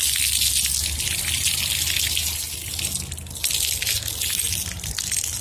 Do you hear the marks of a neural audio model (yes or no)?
no